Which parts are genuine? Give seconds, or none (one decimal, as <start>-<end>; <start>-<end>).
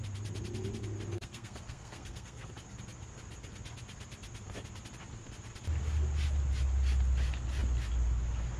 0.0-1.1; 2.5-8.6